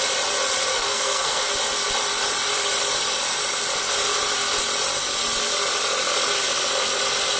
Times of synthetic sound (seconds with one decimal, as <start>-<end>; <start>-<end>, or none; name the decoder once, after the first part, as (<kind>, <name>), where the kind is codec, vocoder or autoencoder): 0.7-1.5 (codec, SNAC)